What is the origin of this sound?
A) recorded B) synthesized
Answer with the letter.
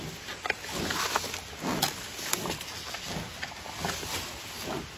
A